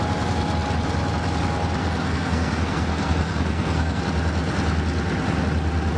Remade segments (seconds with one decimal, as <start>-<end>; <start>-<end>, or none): 1.8-4.0